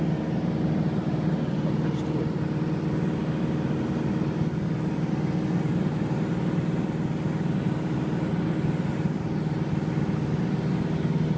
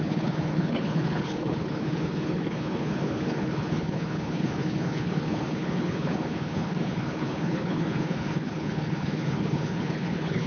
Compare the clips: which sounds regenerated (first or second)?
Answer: second